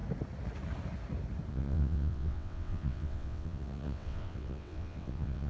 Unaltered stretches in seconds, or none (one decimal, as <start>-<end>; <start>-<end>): 0.0-1.5